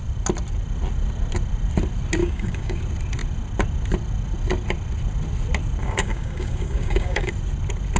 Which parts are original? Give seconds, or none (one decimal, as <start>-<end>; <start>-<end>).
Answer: 0.0-2.2; 2.8-5.8; 7.3-8.0